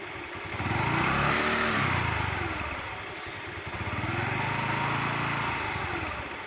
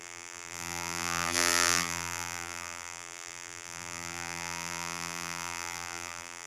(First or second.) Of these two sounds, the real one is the first